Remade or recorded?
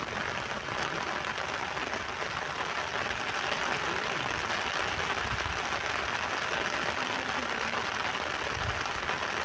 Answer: recorded